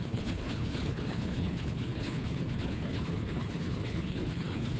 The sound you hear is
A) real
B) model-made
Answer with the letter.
B